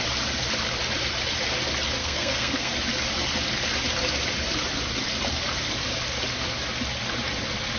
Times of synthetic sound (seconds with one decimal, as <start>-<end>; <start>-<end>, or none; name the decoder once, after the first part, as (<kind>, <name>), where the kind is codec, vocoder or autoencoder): 2.0-2.7 (codec, SNAC)